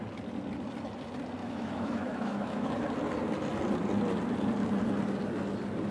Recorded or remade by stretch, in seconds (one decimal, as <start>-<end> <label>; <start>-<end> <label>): 0.0-1.4 recorded; 1.4-2.7 remade; 2.7-5.9 recorded